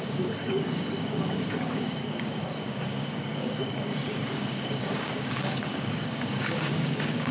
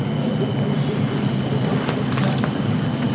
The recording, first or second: second